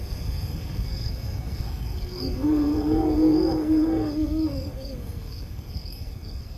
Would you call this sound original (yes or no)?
no